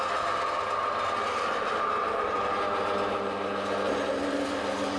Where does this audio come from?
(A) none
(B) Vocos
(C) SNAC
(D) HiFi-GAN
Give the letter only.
A